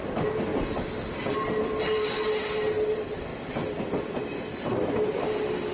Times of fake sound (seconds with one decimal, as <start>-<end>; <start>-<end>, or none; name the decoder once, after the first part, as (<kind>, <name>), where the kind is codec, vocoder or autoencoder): none